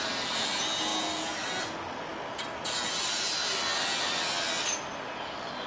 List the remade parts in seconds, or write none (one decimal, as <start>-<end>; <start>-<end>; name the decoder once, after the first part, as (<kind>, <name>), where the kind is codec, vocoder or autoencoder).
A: none